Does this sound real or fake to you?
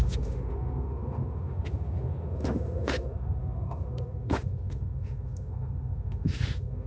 fake